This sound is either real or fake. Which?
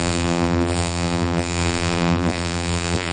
fake